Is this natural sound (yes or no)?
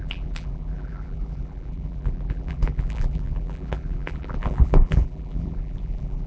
no